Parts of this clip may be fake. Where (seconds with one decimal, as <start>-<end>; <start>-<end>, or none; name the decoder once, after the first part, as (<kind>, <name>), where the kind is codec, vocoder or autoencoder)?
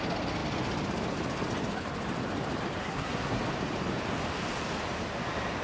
2.8-3.4 (codec, SNAC)